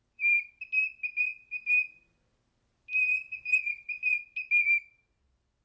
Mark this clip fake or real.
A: real